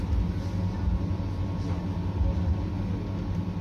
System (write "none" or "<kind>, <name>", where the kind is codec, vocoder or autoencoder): none